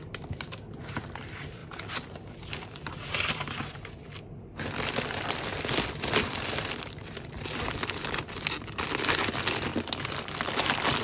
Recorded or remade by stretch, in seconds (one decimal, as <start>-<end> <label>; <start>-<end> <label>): 0.0-11.0 recorded